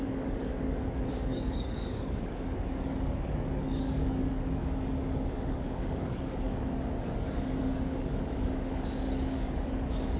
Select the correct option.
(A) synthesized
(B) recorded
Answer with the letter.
A